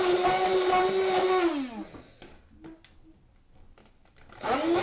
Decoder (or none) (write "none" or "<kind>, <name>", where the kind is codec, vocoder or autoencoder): none